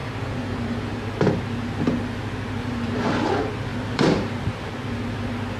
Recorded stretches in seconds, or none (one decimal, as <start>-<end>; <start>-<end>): 1.0-2.6; 3.3-3.7; 4.7-5.6